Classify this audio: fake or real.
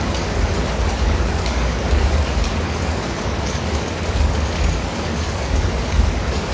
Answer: fake